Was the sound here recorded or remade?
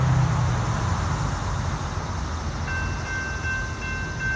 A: recorded